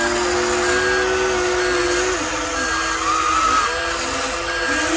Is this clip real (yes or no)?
yes